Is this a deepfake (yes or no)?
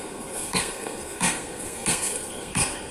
yes